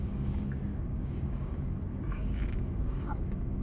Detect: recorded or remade remade